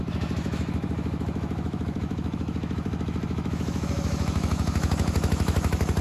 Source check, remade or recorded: remade